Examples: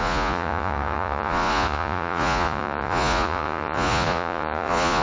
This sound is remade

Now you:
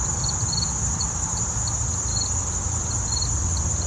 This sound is recorded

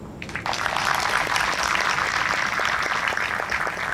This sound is recorded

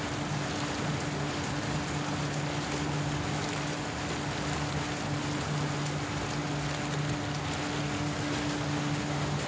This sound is recorded